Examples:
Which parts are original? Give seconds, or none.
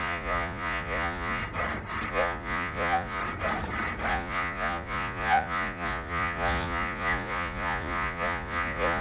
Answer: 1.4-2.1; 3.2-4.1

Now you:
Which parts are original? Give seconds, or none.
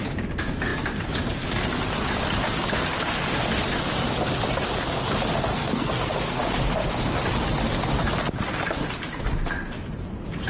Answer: 0.0-5.5; 6.4-10.5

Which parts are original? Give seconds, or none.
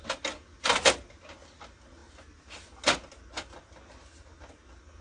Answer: 0.0-5.0